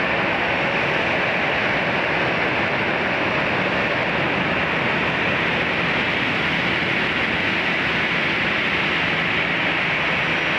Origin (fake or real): real